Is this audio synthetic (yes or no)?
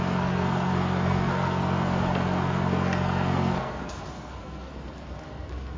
yes